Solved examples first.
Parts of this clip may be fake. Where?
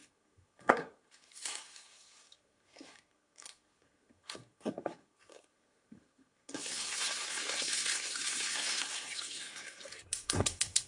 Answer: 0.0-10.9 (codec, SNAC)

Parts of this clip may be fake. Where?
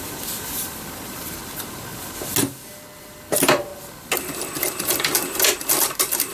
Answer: 0.0-1.4 (vocoder, BigVGAN v2); 3.0-3.7; 4.6-6.3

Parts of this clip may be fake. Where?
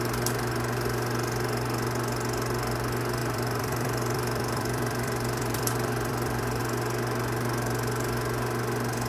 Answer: 3.2-6.6 (vocoder, BigVGAN v2)